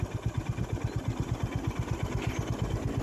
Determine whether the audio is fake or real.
real